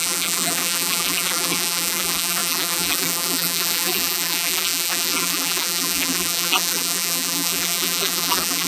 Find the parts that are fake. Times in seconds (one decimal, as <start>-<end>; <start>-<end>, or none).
0.0-8.7